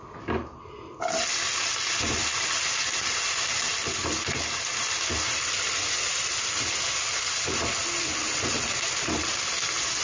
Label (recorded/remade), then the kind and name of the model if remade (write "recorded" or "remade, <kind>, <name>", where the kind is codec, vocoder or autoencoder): recorded